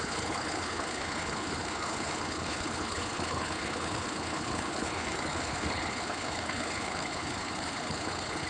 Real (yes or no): no